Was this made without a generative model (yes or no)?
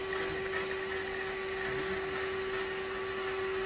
yes